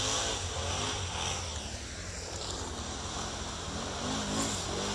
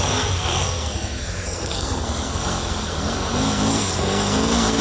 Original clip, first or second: first